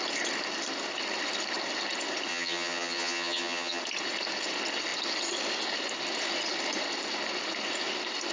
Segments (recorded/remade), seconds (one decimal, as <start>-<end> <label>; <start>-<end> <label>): 0.0-2.3 recorded; 2.3-3.8 remade; 3.8-8.3 recorded